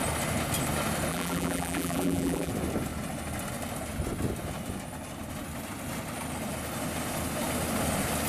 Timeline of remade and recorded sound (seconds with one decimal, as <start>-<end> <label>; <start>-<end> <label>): 0.0-1.1 recorded; 1.1-2.5 remade; 2.5-8.3 recorded